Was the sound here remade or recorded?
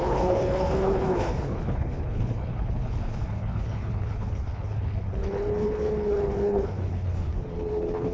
remade